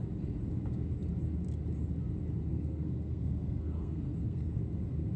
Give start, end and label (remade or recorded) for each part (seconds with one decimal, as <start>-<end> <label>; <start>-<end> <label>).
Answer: 0.0-2.5 recorded; 2.5-4.6 remade; 4.6-5.2 recorded